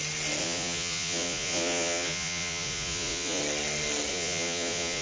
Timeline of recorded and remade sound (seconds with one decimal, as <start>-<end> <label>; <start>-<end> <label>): 0.0-0.4 recorded; 0.4-3.4 remade; 3.4-4.1 recorded; 4.1-5.0 remade

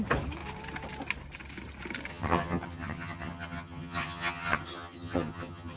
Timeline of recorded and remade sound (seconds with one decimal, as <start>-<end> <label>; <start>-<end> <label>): 0.0-2.1 recorded; 2.1-5.8 remade